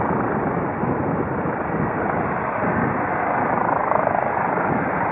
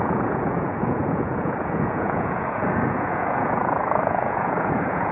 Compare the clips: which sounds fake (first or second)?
second